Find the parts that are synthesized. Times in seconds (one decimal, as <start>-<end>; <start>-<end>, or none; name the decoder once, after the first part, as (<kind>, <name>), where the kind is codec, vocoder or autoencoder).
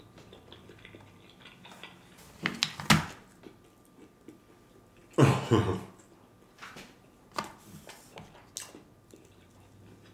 none